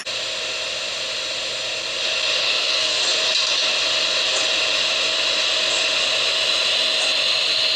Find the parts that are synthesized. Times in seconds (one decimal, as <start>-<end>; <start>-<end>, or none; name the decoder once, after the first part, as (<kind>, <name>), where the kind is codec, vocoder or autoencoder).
2.4-3.0 (codec, SNAC)